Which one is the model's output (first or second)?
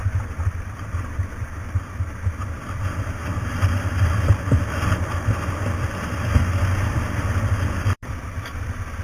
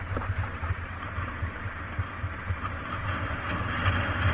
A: first